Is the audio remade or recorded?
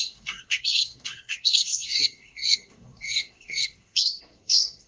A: remade